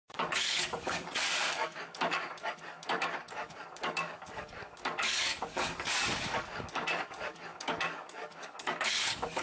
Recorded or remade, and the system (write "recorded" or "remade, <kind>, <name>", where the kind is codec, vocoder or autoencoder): remade, codec, DAC